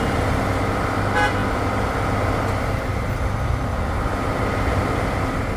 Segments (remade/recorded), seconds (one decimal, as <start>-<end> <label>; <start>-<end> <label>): 0.0-5.6 recorded